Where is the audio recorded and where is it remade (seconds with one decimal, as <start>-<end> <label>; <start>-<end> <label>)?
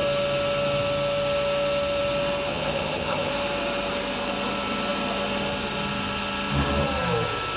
0.0-2.5 recorded; 2.5-3.3 remade; 3.3-7.6 recorded